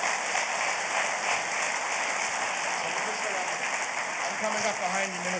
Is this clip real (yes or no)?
yes